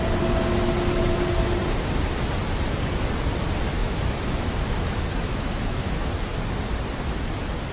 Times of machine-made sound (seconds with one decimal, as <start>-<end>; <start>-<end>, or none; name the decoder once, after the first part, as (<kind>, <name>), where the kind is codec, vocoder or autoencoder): 3.8-6.1 (autoencoder, DAC-VAE)